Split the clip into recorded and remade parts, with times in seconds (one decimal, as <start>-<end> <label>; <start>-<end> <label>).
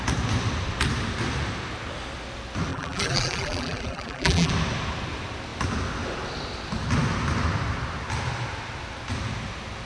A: 0.0-2.7 recorded; 2.7-4.5 remade; 4.5-9.9 recorded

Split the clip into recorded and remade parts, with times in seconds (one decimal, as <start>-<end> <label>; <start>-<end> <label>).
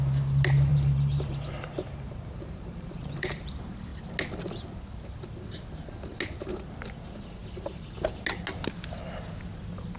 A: 0.0-0.7 recorded; 0.7-3.5 remade; 3.5-10.0 recorded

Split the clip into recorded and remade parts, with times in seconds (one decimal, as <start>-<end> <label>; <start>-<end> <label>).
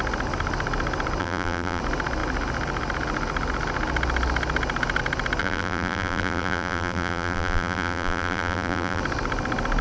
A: 0.0-1.2 recorded; 1.2-1.8 remade; 1.8-5.4 recorded; 5.4-9.0 remade; 9.0-9.8 recorded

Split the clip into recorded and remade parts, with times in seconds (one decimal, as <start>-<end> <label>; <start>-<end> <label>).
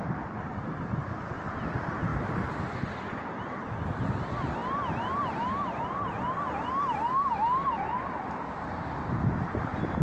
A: 0.0-10.0 recorded